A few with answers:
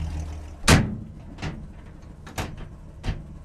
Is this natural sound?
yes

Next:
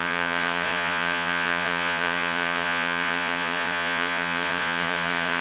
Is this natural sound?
no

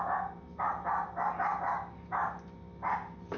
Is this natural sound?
yes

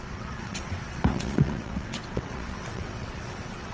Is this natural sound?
no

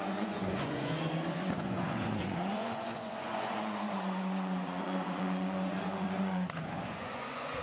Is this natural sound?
no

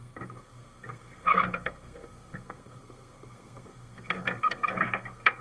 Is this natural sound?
no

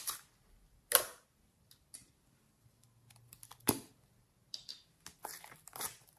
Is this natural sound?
yes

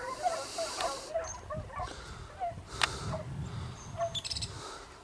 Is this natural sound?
yes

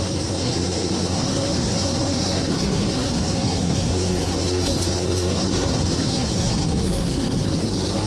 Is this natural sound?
no